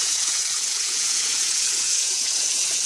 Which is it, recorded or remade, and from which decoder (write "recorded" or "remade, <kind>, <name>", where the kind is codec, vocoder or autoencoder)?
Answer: remade, vocoder, Vocos